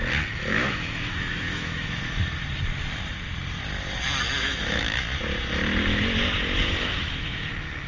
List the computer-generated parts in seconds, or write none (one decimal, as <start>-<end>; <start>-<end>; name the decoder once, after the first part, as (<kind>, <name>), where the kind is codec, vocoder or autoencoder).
0.6-2.0 (autoencoder, DAC-VAE); 4.4-5.1; 6.6-7.4